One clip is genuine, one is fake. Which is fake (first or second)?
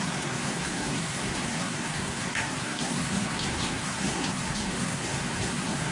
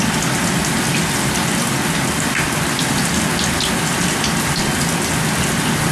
first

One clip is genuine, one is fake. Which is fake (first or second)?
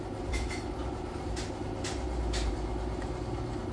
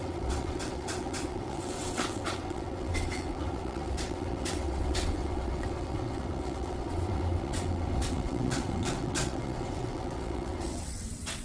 second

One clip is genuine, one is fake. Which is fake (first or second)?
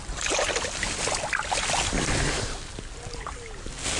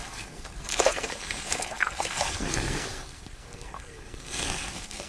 second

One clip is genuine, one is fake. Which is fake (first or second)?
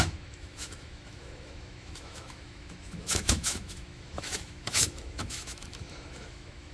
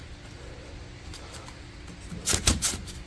first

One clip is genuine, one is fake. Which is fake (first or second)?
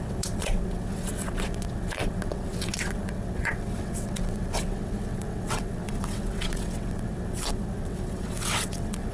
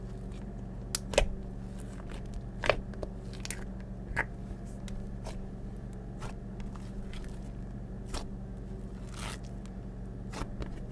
first